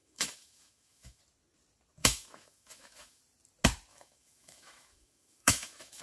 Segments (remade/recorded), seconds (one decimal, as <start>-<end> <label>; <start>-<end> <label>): 0.0-1.2 remade; 1.2-2.0 recorded; 2.0-3.2 remade; 3.2-3.9 recorded; 3.9-6.0 remade